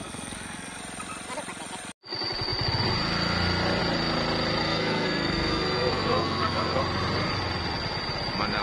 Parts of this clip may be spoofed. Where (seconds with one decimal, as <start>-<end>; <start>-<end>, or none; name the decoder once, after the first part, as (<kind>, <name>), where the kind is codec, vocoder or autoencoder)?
0.0-0.8 (codec, SNAC); 4.6-6.8